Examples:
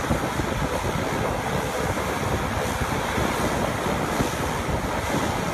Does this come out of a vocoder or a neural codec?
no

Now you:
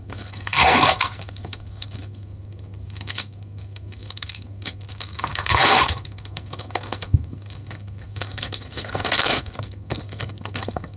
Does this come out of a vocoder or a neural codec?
yes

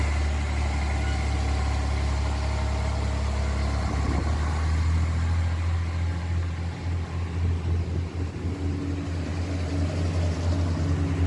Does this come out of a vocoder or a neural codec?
no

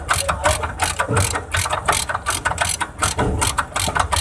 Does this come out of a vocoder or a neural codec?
no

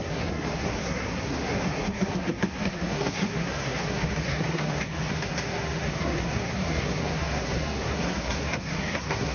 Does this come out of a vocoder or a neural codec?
yes